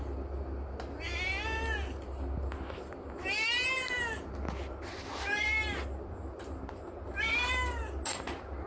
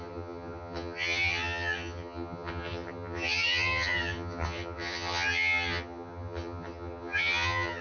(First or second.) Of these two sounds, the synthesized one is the second